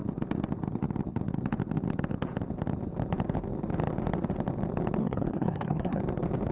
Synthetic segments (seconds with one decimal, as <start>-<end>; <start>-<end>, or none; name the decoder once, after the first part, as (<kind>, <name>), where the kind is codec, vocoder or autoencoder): 5.0-6.0 (codec, SNAC)